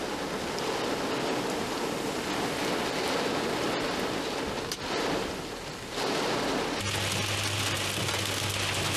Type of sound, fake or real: real